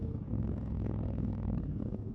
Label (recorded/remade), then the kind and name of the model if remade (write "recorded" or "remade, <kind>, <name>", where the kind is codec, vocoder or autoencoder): remade, codec, DAC